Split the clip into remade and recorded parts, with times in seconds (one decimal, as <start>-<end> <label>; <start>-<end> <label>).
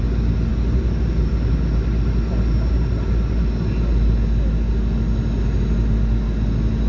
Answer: 0.0-6.9 recorded